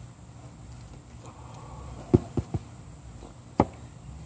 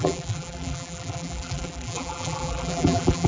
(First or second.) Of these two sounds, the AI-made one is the second